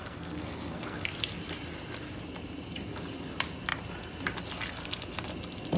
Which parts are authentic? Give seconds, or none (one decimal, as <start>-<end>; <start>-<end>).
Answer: 1.1-5.8